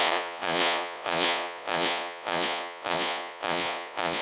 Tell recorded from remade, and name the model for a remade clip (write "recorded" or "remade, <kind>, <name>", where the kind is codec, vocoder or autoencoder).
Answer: remade, vocoder, Vocos